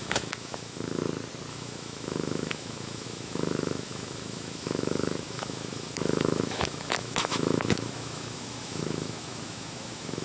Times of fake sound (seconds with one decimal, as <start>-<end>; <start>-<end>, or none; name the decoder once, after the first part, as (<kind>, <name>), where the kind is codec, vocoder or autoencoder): 0.0-1.0 (autoencoder, DAC-VAE); 1.5-10.2